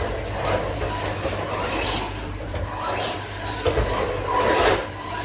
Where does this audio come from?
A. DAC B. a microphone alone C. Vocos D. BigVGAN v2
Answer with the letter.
D